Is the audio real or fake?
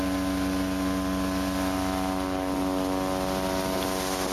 real